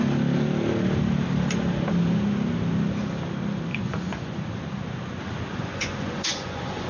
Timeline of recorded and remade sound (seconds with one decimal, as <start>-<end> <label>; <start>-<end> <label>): 0.0-3.7 recorded; 3.7-4.4 remade; 4.4-5.5 recorded; 5.5-6.9 remade